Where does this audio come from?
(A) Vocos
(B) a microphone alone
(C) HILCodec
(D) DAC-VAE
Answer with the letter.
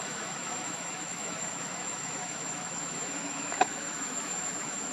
D